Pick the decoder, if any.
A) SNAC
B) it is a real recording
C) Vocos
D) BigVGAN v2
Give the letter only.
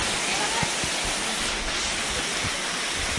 B